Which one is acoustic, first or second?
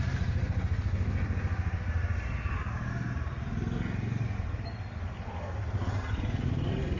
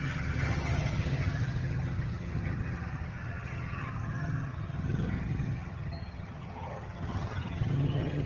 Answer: first